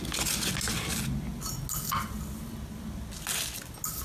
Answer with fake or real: real